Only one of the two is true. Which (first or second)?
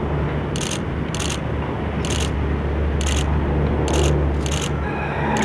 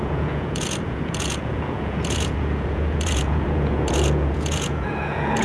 first